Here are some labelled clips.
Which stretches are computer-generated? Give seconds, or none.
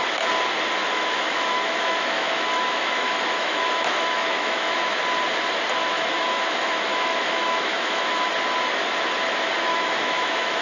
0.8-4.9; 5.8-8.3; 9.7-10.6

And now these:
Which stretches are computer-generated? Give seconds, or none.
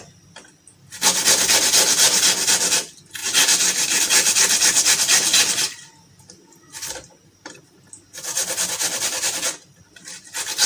none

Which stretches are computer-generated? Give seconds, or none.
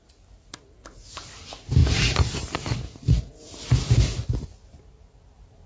none